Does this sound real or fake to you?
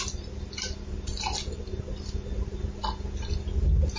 real